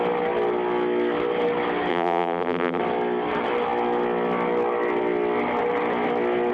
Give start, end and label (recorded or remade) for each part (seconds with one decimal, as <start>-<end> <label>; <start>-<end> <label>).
0.0-1.9 recorded; 1.9-2.8 remade; 2.8-6.5 recorded